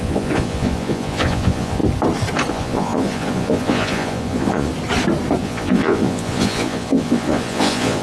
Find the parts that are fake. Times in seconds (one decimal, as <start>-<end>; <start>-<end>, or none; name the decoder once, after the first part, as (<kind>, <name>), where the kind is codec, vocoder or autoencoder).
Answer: 0.0-1.8 (vocoder, Vocos); 2.5-4.7; 5.4-8.0